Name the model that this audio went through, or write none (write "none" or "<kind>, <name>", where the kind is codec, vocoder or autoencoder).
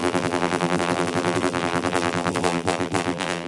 vocoder, BigVGAN v2